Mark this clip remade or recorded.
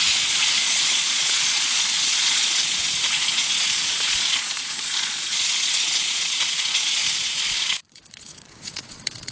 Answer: remade